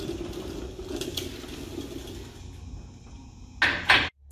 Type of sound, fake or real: real